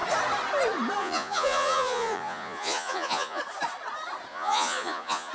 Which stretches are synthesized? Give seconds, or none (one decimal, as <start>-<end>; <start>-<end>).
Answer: 1.0-3.4; 4.3-5.3